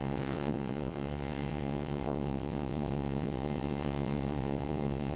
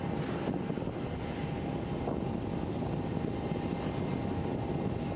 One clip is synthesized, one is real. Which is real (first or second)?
second